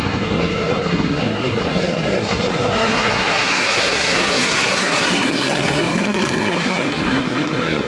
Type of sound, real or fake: fake